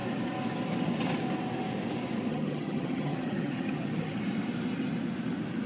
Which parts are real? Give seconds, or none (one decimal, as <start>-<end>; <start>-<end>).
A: 0.0-2.3; 4.2-5.7